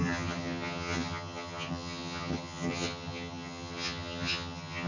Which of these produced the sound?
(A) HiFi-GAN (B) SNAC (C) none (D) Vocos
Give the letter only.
A